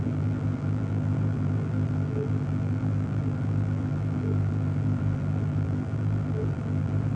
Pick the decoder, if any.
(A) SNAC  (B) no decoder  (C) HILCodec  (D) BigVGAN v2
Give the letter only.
D